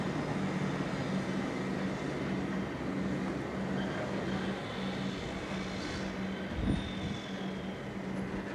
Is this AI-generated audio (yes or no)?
no